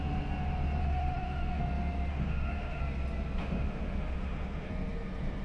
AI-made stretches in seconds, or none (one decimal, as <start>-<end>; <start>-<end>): 0.8-1.6; 2.1-2.8; 3.4-4.7